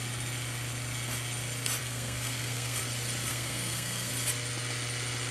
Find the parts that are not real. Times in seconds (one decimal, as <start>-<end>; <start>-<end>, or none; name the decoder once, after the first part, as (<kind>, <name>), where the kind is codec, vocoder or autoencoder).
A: 1.8-2.8 (codec, SNAC); 3.3-4.1